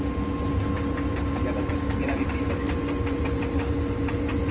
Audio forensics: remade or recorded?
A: recorded